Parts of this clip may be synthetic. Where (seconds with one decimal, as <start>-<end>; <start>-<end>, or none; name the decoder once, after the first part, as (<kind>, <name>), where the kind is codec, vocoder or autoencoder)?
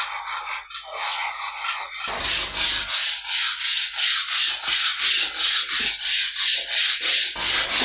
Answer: none